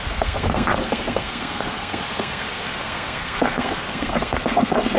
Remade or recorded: remade